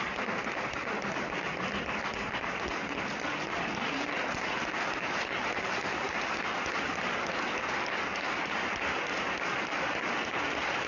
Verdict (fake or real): real